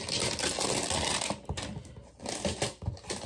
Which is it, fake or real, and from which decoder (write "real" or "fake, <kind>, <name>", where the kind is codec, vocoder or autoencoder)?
real